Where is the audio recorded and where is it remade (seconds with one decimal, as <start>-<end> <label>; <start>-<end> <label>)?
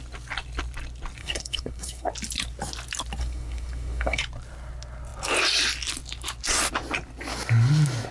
0.0-1.2 recorded; 1.2-2.1 remade; 2.1-3.2 recorded; 3.2-4.2 remade; 4.2-8.1 recorded